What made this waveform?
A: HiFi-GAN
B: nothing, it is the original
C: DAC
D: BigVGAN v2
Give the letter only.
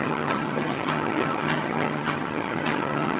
A